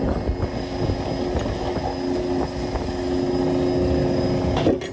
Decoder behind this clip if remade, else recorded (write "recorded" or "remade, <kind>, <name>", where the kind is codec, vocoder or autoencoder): recorded